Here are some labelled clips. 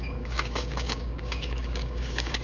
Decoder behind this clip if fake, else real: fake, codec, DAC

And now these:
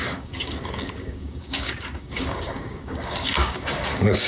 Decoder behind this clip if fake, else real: fake, codec, DAC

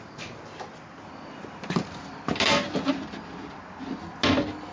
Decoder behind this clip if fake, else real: real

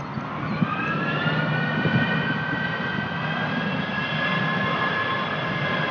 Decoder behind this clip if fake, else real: real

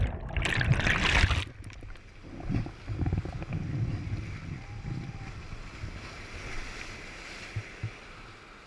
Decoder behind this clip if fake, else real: real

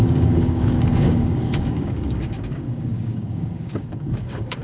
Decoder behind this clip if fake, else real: fake, codec, DAC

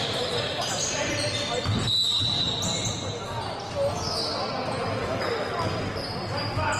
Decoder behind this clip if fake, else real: real